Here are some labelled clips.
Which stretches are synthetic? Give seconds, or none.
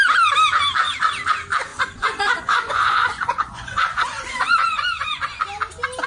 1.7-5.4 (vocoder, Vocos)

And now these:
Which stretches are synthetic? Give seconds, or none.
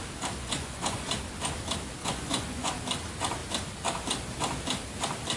0.4-1.1 (vocoder, Vocos); 2.0-2.7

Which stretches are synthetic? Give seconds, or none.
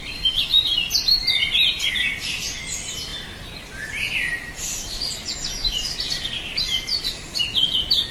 none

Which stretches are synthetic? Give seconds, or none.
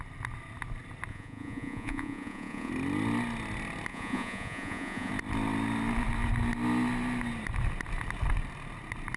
1.1-2.7 (vocoder, Vocos); 3.9-5.1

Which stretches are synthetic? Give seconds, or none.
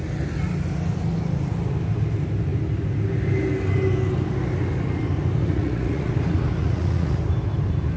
5.4-6.1 (vocoder, Vocos); 6.6-7.2